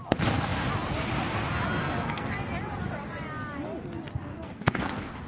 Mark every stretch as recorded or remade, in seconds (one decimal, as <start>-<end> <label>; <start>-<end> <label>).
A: 0.0-1.8 recorded; 1.8-2.3 remade; 2.3-4.3 recorded; 4.3-5.3 remade